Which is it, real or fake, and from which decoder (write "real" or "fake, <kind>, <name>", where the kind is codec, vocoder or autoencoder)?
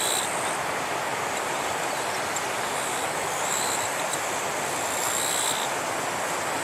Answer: real